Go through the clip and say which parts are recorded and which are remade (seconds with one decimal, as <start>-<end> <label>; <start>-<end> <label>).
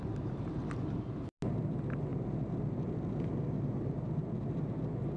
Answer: 0.0-5.2 recorded